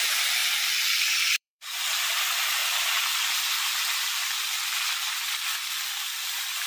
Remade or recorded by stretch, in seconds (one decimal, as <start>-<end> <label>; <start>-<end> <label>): 0.0-6.7 remade